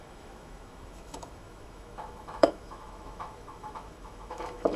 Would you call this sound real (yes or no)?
no